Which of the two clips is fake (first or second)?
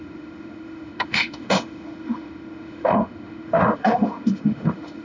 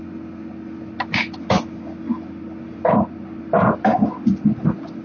first